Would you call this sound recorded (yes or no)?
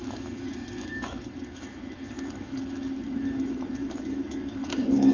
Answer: no